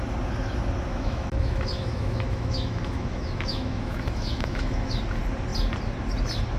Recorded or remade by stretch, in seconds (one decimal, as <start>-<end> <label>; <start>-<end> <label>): 0.0-0.9 recorded; 0.9-4.9 remade; 4.9-6.6 recorded